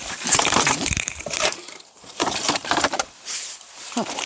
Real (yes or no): no